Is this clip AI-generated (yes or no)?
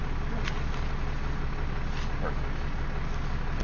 no